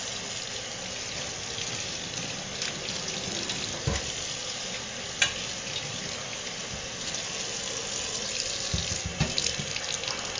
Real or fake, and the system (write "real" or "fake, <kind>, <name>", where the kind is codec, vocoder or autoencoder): real